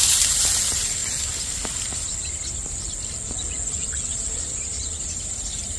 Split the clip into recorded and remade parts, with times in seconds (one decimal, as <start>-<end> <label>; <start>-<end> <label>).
0.0-5.8 recorded